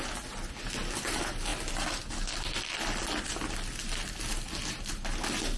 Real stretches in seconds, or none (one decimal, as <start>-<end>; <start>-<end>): 0.0-5.6